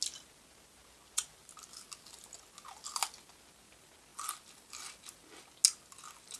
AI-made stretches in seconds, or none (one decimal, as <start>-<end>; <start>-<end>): none